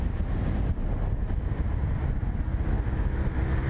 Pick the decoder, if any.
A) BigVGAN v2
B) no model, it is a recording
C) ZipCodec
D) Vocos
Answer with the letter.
B